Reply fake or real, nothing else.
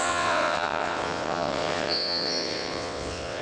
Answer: fake